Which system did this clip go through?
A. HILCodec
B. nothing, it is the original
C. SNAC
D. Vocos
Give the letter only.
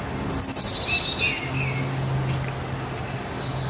B